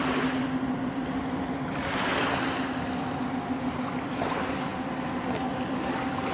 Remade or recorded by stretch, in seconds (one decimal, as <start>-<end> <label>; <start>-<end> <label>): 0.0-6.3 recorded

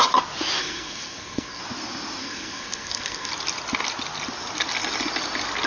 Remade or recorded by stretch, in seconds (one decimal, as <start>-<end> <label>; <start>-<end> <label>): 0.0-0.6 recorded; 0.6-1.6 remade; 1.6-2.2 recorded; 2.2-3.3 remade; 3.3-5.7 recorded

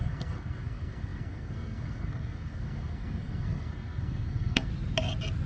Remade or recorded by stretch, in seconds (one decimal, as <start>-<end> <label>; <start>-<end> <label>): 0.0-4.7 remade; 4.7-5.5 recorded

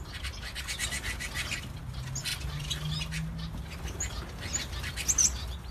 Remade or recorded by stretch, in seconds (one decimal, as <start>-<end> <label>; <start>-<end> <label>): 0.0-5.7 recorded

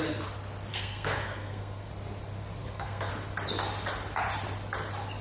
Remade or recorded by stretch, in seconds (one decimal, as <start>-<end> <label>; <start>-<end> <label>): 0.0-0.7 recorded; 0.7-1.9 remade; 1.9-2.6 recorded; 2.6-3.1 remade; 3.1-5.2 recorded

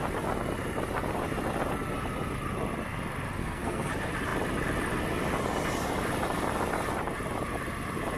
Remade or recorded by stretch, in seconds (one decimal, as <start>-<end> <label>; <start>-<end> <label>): 0.0-3.4 recorded; 3.4-3.9 remade; 3.9-8.2 recorded

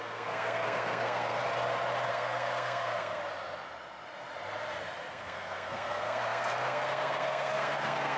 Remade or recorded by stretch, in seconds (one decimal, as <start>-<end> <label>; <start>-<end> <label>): 0.0-1.4 remade; 1.4-2.1 recorded; 2.1-3.2 remade; 3.2-5.1 recorded; 5.1-8.2 remade

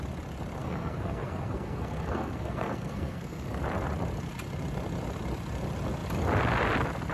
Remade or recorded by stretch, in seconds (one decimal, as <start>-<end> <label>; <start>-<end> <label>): 0.0-0.6 recorded; 0.6-3.6 remade; 3.6-7.1 recorded